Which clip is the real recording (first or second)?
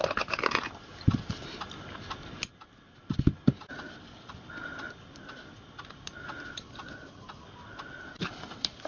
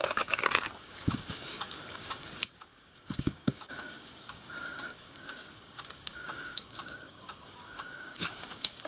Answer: first